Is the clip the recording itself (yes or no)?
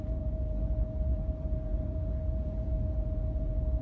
no